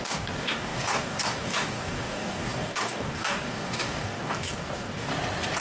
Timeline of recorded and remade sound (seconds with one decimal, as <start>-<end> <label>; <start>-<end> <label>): 0.0-5.1 remade; 5.1-5.6 recorded